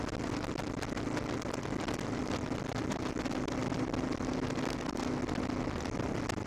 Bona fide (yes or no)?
yes